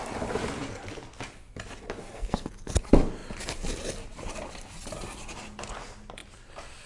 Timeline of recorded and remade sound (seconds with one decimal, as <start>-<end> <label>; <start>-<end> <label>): 0.0-2.0 recorded; 2.0-2.5 remade; 2.5-6.9 recorded